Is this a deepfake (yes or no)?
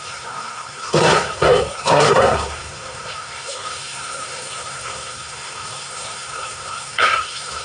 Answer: yes